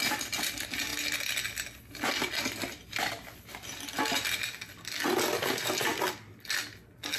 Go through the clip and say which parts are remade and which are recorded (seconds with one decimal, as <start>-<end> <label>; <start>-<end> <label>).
0.0-7.2 recorded